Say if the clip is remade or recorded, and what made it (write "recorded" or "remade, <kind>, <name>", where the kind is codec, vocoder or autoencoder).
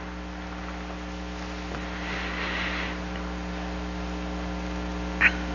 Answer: recorded